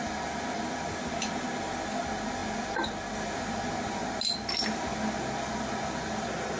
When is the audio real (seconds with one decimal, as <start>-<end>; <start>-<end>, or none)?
0.0-6.6